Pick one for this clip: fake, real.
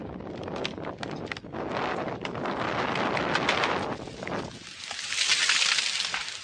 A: real